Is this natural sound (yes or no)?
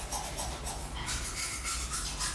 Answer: yes